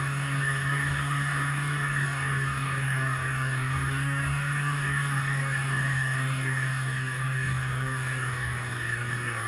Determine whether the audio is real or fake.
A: fake